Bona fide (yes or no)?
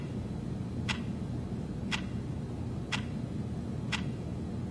yes